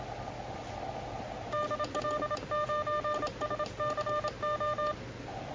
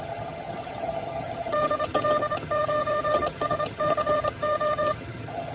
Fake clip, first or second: second